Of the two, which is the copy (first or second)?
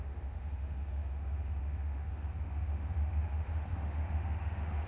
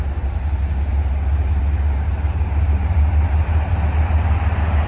first